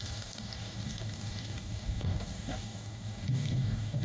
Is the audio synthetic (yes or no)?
yes